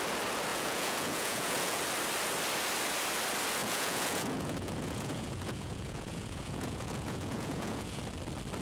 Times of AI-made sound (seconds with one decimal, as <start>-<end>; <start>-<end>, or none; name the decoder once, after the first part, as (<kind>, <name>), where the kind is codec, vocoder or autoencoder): 0.5-1.8 (vocoder, Vocos); 3.6-8.0